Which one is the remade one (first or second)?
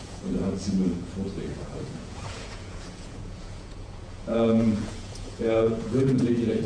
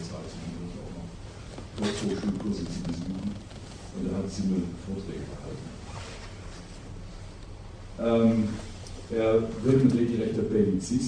first